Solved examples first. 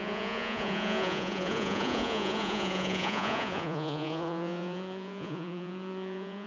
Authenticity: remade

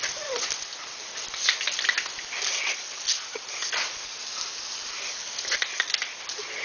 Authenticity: recorded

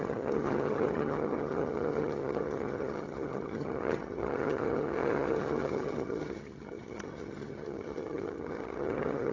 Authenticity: remade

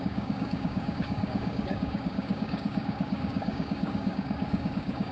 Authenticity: remade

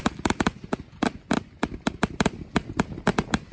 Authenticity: recorded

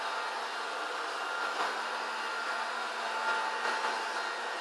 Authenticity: recorded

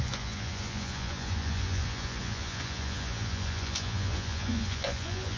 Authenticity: remade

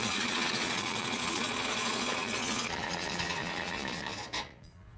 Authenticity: remade